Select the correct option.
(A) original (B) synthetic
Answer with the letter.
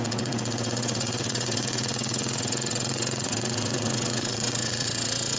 B